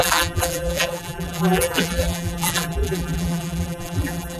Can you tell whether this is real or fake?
fake